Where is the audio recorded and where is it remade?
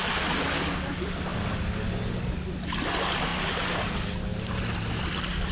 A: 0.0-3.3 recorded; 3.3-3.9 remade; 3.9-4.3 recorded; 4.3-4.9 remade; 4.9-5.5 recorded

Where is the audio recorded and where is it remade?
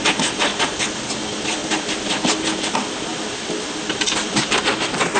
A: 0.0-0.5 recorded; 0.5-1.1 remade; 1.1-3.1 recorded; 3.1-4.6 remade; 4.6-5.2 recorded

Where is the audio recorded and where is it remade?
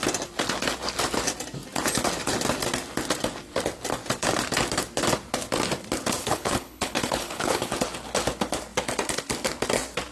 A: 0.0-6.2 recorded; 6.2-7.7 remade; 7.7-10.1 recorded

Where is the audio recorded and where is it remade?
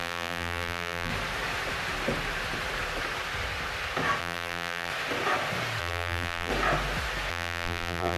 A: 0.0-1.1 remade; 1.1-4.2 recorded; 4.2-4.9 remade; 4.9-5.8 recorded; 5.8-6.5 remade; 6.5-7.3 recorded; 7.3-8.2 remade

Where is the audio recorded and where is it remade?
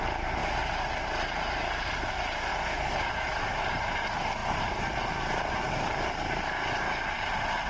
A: 0.0-7.7 recorded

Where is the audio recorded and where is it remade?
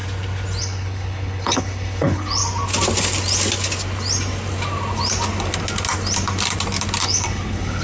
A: 0.0-0.6 recorded; 0.6-2.4 remade; 2.4-7.0 recorded; 7.0-7.8 remade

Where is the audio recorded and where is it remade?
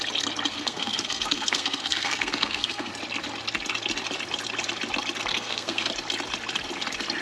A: 0.0-0.5 recorded; 0.5-2.9 remade; 2.9-5.3 recorded; 5.3-5.9 remade; 5.9-7.2 recorded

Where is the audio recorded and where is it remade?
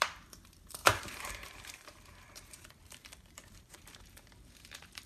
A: 0.0-5.1 remade